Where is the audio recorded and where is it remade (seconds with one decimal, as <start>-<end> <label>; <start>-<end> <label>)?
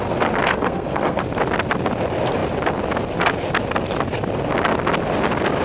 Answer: 0.0-0.5 recorded; 0.5-1.2 remade; 1.2-5.6 recorded